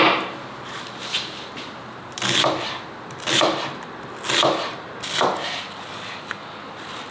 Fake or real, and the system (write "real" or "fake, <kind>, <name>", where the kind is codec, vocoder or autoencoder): real